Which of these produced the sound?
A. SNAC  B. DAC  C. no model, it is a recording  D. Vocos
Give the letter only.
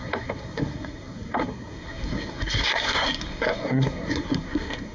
A